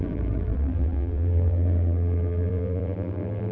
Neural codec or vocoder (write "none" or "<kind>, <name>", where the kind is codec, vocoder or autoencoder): vocoder, BigVGAN v2